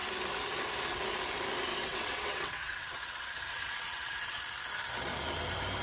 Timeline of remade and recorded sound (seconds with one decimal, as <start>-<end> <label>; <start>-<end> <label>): 0.0-1.7 recorded; 1.7-4.4 remade; 4.4-5.8 recorded